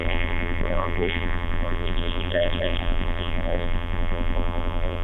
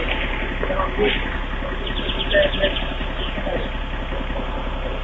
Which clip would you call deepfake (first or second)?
first